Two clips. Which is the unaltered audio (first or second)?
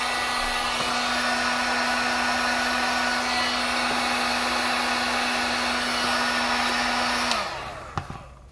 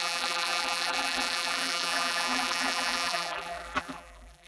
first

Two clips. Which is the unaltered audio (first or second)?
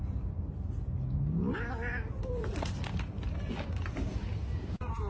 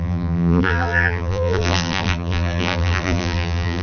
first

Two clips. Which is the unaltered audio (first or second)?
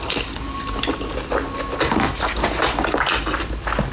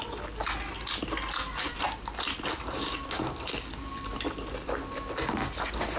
second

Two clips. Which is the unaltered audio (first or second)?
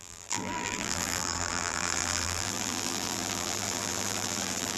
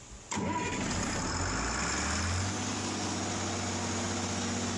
second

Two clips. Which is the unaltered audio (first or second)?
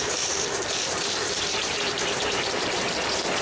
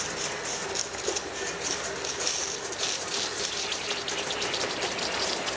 second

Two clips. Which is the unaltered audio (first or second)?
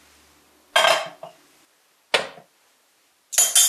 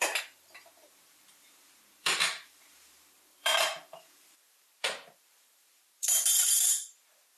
first